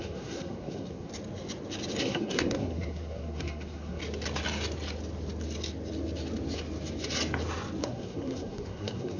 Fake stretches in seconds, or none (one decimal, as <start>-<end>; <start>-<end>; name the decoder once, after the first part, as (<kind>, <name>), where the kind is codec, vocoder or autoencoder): 0.0-1.1 (codec, SNAC); 2.0-4.0; 7.8-9.2